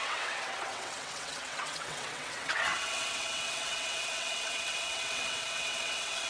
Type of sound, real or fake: fake